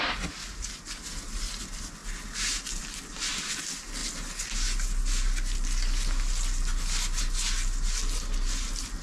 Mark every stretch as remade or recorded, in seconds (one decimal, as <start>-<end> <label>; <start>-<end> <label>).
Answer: 0.0-9.0 recorded